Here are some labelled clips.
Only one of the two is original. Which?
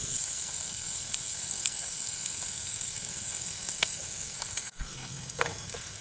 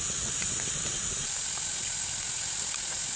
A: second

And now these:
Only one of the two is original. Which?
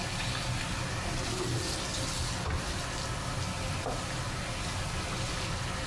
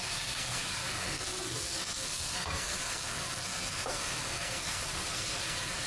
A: first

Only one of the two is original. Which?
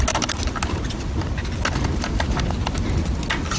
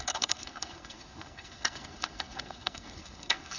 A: first